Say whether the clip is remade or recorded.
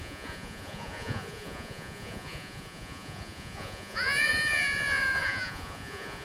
remade